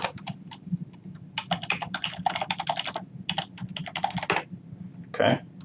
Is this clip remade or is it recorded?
recorded